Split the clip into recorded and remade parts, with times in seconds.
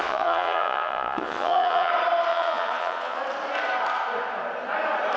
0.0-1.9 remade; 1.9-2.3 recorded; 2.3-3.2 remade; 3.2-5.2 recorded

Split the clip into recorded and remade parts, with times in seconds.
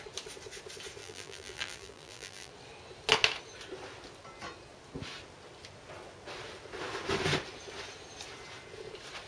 0.0-1.0 recorded; 1.0-2.5 remade; 2.5-9.3 recorded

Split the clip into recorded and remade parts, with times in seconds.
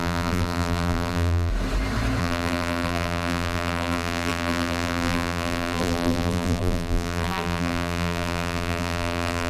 0.0-1.5 remade; 1.5-2.2 recorded; 2.2-9.5 remade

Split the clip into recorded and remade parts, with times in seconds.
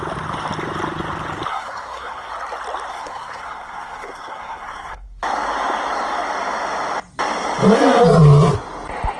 0.0-1.5 recorded; 1.5-2.3 remade; 2.3-2.9 recorded; 2.9-5.2 remade; 5.2-9.2 recorded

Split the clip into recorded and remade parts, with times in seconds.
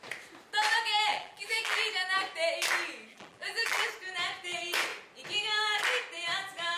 0.0-1.1 recorded; 1.1-1.9 remade; 1.9-3.1 recorded; 3.1-3.9 remade; 3.9-6.8 recorded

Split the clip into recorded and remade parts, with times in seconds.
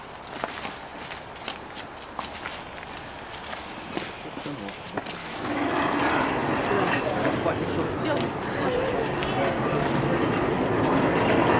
0.0-5.2 recorded; 5.2-5.7 remade; 5.7-11.6 recorded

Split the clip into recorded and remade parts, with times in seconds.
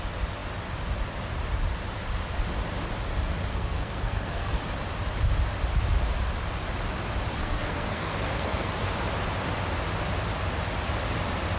0.0-3.5 recorded; 3.5-4.6 remade; 4.6-7.4 recorded; 7.4-8.7 remade; 8.7-11.6 recorded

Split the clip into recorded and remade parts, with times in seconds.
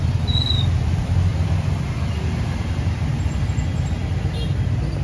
0.0-5.0 recorded